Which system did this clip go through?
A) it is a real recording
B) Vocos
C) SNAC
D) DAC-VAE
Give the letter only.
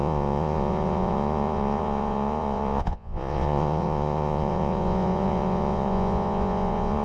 B